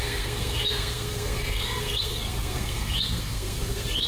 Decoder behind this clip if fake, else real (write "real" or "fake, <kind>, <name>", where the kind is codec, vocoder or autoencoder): fake, codec, SNAC